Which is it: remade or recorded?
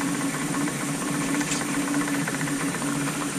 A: remade